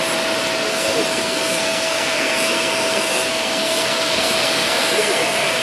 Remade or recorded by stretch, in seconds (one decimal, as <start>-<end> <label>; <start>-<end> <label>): 0.0-0.7 recorded; 0.7-5.6 remade